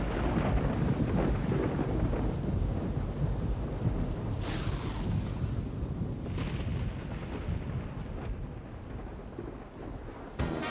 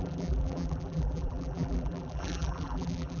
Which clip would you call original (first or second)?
first